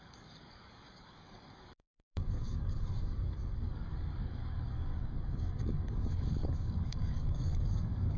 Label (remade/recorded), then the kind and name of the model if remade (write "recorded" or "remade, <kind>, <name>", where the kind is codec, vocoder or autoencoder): remade, codec, DAC